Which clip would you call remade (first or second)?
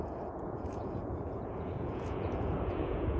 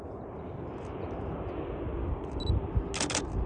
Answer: first